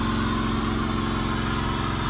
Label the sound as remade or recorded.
recorded